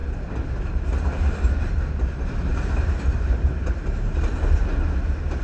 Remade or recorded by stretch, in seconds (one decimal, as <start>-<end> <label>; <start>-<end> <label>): 0.0-2.5 recorded; 2.5-4.6 remade; 4.6-5.4 recorded